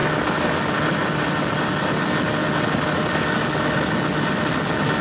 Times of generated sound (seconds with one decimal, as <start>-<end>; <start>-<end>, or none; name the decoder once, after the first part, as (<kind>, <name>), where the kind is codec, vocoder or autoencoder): none